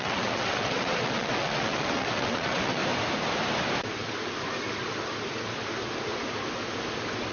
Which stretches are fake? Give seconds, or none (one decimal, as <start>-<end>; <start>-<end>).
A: 0.0-2.8